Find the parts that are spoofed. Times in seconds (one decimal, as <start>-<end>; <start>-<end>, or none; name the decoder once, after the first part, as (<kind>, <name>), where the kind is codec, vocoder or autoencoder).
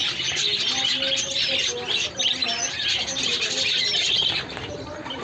none